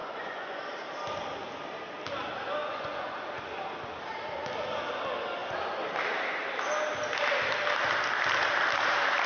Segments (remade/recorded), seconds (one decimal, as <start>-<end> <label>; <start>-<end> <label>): 0.0-0.6 remade; 0.6-2.6 recorded; 2.6-3.3 remade; 3.3-9.3 recorded